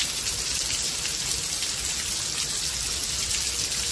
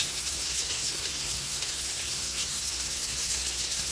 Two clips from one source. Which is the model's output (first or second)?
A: second